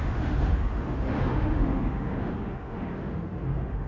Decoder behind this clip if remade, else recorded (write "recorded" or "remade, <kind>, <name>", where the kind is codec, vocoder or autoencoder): remade, autoencoder, DAC-VAE